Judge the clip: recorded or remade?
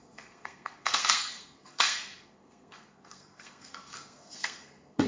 remade